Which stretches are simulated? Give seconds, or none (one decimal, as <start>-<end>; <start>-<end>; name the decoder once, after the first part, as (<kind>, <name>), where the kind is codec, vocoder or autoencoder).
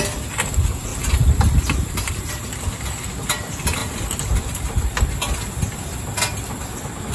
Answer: 0.9-2.3 (vocoder, BigVGAN v2)